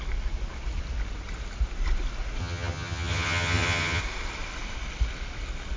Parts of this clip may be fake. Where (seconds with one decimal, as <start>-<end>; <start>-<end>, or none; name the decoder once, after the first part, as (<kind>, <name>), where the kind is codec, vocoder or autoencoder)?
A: 2.4-4.0 (vocoder, HiFi-GAN)